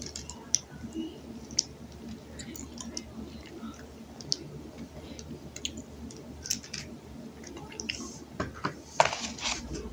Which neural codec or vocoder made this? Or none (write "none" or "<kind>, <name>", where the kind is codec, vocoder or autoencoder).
none